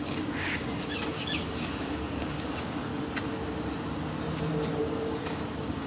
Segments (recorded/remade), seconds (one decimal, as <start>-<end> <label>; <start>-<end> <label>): 0.0-2.9 remade; 2.9-4.8 recorded; 4.8-5.9 remade